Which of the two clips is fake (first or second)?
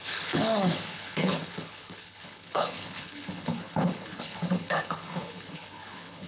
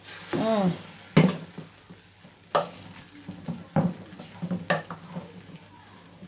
first